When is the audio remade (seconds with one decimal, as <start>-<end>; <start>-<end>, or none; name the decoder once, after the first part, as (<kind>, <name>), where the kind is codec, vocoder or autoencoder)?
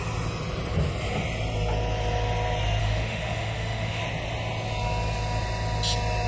2.8-4.0 (autoencoder, DAC-VAE)